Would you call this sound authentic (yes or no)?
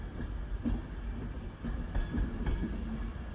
yes